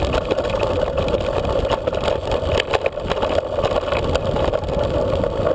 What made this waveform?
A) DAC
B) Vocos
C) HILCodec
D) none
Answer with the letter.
D